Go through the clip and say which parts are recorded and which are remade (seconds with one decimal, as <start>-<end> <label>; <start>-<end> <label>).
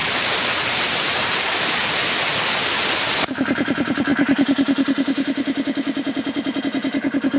0.0-0.8 recorded; 0.8-2.0 remade; 2.0-3.2 recorded; 3.2-7.4 remade